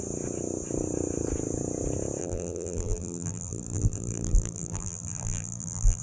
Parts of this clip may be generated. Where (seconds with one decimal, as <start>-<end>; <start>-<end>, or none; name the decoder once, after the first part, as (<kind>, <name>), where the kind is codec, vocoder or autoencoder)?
2.2-6.0 (vocoder, BigVGAN v2)